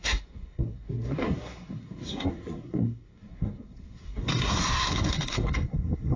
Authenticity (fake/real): fake